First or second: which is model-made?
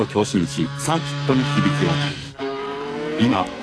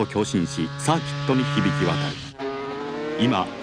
first